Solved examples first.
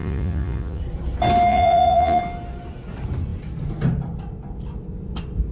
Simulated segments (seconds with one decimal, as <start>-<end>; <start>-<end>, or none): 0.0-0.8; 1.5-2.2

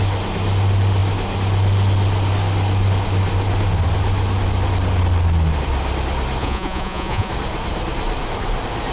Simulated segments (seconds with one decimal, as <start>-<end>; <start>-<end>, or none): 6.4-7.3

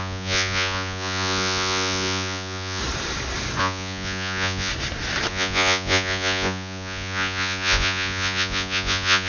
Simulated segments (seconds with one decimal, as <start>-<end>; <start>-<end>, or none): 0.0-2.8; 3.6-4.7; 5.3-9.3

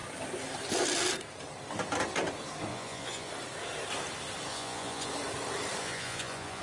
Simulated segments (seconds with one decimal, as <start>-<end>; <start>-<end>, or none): 2.7-3.3; 4.5-5.1; 5.8-6.6

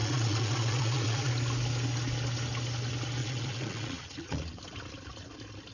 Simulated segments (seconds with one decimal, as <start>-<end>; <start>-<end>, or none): 0.0-1.3; 3.2-4.6

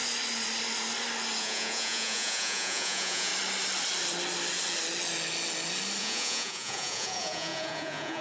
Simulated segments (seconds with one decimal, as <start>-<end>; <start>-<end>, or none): 1.4-3.3; 6.0-8.2